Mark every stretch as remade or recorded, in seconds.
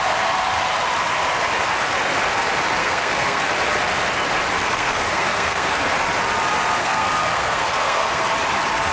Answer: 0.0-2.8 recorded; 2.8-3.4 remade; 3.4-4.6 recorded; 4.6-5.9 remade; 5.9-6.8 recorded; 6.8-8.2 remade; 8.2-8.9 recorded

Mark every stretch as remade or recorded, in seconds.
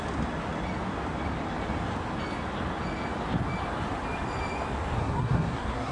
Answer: 0.0-5.0 recorded; 5.0-5.9 remade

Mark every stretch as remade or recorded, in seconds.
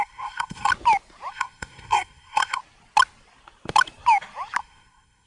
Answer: 0.0-0.7 remade; 0.7-1.3 recorded; 1.3-2.6 remade; 2.6-4.6 recorded; 4.6-5.3 remade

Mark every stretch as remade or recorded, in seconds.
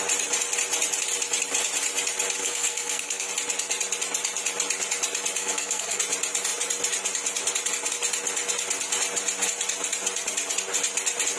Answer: 0.0-2.4 recorded; 2.4-3.3 remade; 3.3-5.4 recorded; 5.4-6.0 remade; 6.0-11.4 recorded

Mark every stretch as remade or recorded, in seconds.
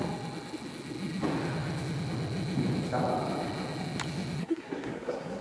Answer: 0.0-4.4 recorded; 4.4-5.4 remade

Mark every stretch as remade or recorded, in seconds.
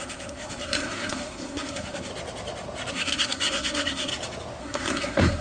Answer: 0.0-2.1 remade; 2.1-2.9 recorded; 2.9-4.1 remade; 4.1-4.6 recorded; 4.6-5.4 remade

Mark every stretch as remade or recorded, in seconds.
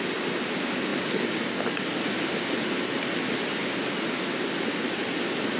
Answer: 0.0-5.6 recorded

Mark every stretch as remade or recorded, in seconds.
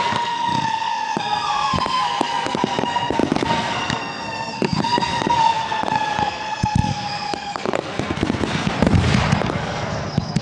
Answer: 0.0-8.7 remade; 8.7-9.4 recorded; 9.4-10.4 remade